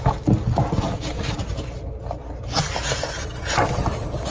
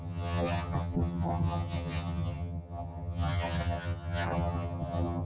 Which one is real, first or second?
first